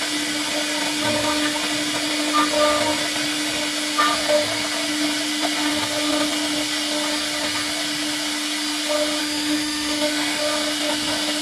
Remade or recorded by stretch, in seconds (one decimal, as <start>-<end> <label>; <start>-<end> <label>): 0.0-9.2 recorded; 9.2-10.4 remade; 10.4-11.4 recorded